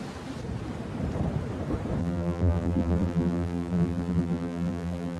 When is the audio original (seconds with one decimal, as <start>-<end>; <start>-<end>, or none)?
0.0-2.0